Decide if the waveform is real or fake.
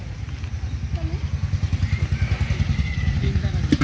real